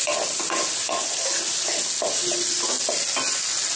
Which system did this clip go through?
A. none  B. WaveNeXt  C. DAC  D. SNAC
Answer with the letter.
A